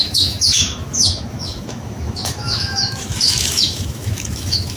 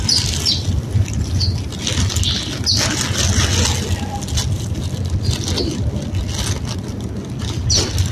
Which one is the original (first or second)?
second